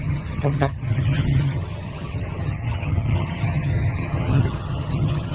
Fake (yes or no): yes